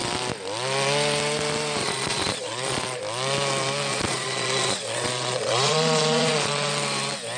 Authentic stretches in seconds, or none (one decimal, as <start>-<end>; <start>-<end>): 0.0-1.8; 3.0-3.9; 6.7-7.4